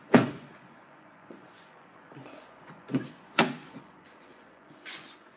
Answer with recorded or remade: remade